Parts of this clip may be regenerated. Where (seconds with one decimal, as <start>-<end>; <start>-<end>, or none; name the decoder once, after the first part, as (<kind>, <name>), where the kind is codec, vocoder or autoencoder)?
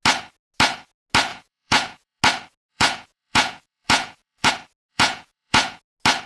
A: 1.3-2.2 (vocoder, Vocos); 2.7-4.5; 4.9-5.8